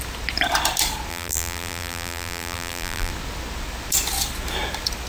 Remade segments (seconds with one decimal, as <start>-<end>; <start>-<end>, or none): 1.1-3.1